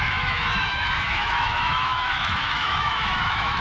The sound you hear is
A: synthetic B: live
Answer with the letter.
A